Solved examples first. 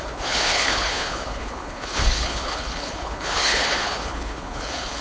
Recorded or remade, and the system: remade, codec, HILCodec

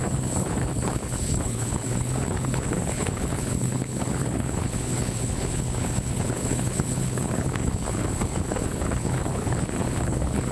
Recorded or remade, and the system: remade, codec, HILCodec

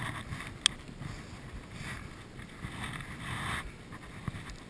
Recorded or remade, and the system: recorded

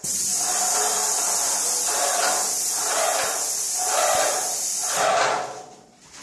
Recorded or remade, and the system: recorded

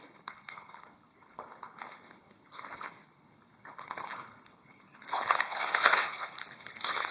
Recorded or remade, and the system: remade, codec, HILCodec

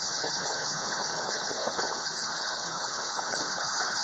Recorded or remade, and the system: remade, codec, HILCodec